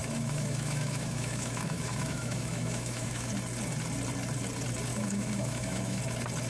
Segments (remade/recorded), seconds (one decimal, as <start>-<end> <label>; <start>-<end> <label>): 0.0-3.3 remade; 3.3-4.9 recorded; 4.9-6.0 remade; 6.0-6.5 recorded